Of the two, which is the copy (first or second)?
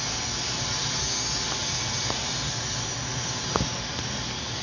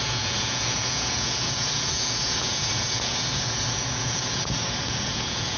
second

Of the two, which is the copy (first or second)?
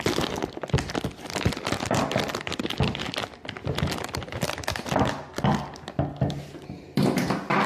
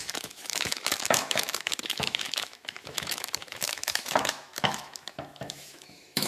second